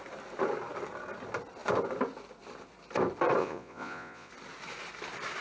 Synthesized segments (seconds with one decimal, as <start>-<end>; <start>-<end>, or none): 3.4-4.3